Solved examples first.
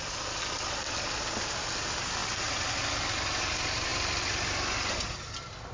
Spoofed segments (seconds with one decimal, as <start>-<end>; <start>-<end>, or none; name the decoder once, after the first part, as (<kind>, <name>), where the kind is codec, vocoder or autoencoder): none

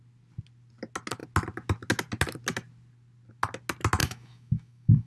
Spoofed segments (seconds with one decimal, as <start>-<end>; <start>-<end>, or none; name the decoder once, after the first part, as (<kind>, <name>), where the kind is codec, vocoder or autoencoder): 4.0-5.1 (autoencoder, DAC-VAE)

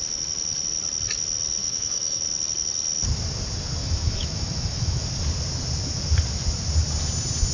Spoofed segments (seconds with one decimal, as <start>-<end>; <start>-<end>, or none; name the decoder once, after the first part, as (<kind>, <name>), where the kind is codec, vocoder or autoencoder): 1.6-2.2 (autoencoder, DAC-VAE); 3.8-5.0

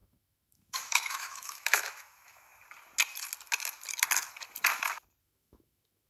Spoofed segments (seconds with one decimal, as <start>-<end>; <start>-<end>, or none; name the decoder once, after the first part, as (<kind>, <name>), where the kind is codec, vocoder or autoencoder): 0.0-2.5 (autoencoder, DAC-VAE); 5.2-6.1

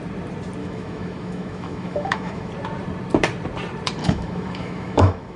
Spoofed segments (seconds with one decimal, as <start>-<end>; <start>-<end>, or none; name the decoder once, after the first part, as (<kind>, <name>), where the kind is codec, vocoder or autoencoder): 0.6-2.5 (autoencoder, DAC-VAE); 4.0-5.4

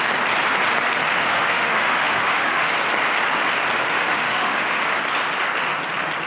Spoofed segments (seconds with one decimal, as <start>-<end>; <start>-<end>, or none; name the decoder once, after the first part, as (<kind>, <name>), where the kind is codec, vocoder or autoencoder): 1.2-2.7 (autoencoder, DAC-VAE); 3.9-4.8

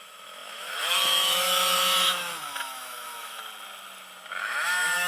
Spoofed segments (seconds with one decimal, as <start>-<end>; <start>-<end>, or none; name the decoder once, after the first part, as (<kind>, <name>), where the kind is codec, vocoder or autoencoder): 0.0-3.4 (autoencoder, DAC-VAE); 4.4-5.1

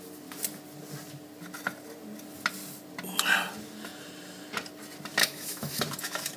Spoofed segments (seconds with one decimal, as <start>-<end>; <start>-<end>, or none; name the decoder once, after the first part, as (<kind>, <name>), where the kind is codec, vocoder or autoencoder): 5.2-5.8 (autoencoder, DAC-VAE)